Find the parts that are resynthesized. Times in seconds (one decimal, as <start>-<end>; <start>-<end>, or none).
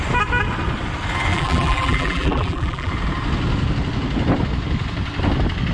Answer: 1.3-2.9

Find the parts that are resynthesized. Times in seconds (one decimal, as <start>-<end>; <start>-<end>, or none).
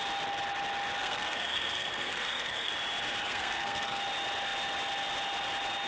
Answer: 1.0-2.7; 3.3-4.0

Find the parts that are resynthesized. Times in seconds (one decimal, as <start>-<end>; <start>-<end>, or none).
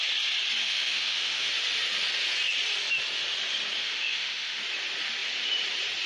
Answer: 0.6-1.5; 3.8-4.6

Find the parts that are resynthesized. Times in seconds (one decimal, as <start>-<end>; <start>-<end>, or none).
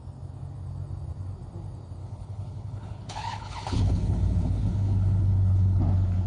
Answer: 2.0-5.8